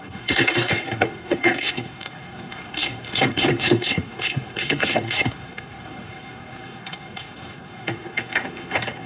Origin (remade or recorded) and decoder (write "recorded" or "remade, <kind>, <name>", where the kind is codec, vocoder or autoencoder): remade, codec, SNAC